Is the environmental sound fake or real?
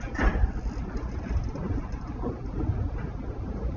real